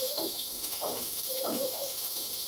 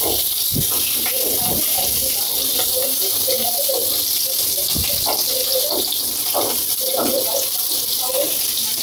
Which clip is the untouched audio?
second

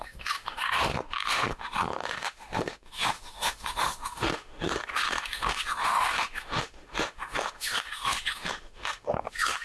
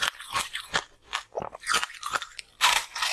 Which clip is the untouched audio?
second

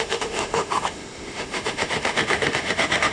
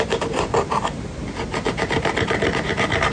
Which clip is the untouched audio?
second